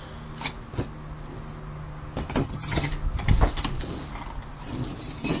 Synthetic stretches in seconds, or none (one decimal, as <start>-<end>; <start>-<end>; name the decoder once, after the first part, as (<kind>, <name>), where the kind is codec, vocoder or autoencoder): 2.4-2.9 (vocoder, HiFi-GAN)